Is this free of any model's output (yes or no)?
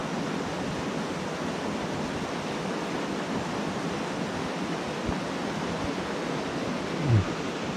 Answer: yes